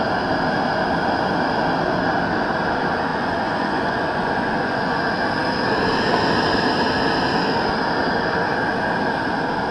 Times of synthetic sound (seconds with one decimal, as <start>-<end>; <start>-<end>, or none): 3.1-5.0